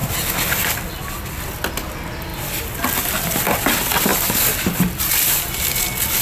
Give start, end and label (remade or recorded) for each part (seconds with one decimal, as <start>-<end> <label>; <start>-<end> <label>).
0.0-4.1 recorded; 4.1-5.4 remade; 5.4-6.2 recorded